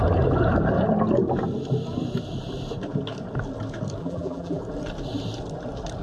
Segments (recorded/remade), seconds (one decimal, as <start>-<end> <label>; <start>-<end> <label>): 0.0-4.0 recorded; 4.0-4.6 remade; 4.6-6.0 recorded